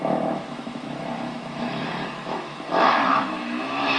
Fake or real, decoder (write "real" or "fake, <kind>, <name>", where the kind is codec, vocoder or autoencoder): fake, autoencoder, DAC-VAE